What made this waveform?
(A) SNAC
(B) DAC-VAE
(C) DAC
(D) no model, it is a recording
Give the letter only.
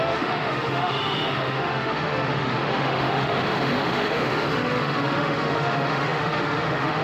B